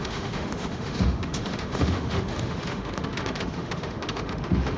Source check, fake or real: fake